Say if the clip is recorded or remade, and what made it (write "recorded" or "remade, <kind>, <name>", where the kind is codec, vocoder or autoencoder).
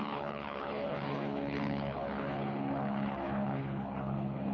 remade, codec, HILCodec